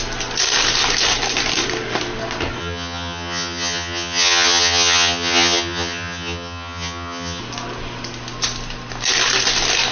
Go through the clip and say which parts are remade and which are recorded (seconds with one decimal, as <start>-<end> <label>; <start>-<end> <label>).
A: 0.0-2.6 recorded; 2.6-7.4 remade; 7.4-9.9 recorded